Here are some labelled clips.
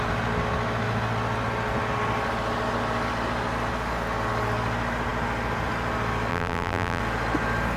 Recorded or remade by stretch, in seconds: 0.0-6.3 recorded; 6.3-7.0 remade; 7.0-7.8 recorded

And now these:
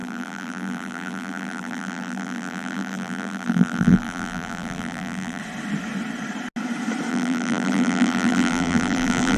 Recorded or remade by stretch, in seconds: 0.0-5.4 remade; 5.4-7.1 recorded; 7.1-9.4 remade

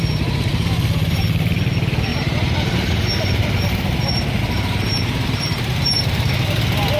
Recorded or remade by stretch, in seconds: 0.0-0.5 recorded; 0.5-1.6 remade; 1.6-2.1 recorded; 2.1-6.3 remade; 6.3-7.0 recorded

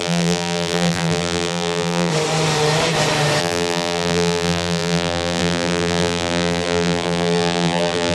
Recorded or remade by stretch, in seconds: 0.0-2.1 remade; 2.1-3.4 recorded; 3.4-8.1 remade

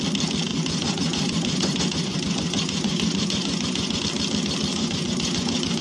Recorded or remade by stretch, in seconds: 0.0-0.5 recorded; 0.5-4.0 remade; 4.0-4.7 recorded; 4.7-5.8 remade